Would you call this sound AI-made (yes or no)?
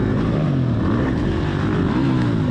no